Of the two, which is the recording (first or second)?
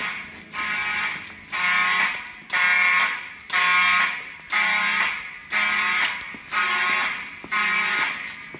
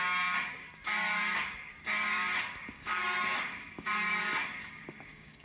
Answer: first